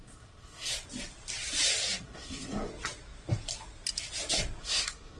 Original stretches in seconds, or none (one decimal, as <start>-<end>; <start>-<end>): 0.7-2.0; 2.7-4.6